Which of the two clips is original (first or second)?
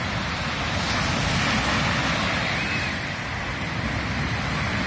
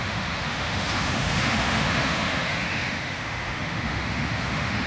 first